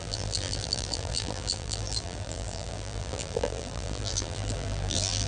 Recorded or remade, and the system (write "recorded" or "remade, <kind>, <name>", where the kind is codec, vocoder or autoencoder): remade, vocoder, BigVGAN v2